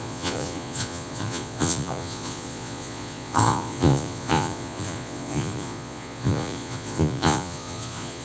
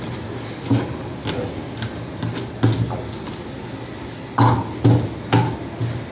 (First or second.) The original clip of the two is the second